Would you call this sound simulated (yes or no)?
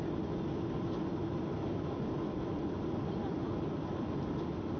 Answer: no